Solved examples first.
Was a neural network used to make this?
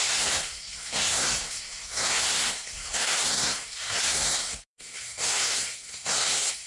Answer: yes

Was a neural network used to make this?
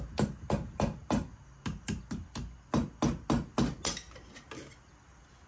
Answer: no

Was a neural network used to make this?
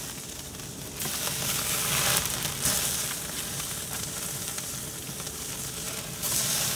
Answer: no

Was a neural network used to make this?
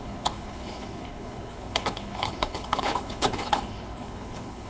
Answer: yes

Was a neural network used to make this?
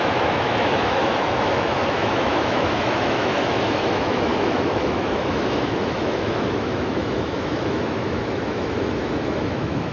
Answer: yes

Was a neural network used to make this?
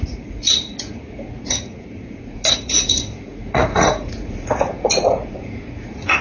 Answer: yes